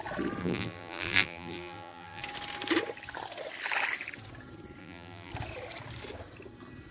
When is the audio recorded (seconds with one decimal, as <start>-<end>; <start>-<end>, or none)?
0.0-0.4; 2.2-4.8; 5.3-6.9